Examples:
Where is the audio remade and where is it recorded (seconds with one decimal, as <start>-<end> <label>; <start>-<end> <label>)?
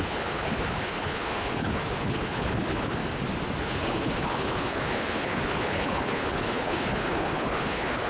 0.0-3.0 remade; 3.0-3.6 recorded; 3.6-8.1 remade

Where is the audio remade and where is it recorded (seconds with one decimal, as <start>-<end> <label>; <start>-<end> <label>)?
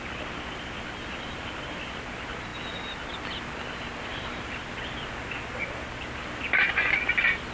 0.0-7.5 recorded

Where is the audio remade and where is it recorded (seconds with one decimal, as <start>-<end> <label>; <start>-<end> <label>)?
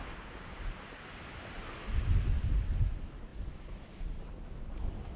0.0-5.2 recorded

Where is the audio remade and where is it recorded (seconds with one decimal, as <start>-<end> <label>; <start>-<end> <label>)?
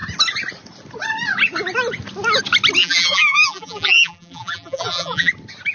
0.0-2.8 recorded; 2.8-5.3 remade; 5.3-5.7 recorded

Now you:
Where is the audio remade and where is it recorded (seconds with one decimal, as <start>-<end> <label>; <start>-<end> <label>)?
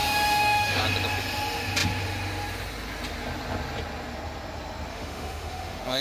0.0-0.8 remade; 0.8-4.9 recorded; 4.9-6.0 remade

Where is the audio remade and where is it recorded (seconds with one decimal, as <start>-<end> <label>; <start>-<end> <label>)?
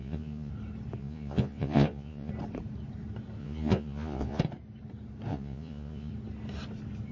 0.0-0.5 remade; 0.5-1.0 recorded; 1.0-2.3 remade; 2.3-3.4 recorded; 3.4-4.4 remade; 4.4-5.3 recorded; 5.3-6.1 remade; 6.1-7.1 recorded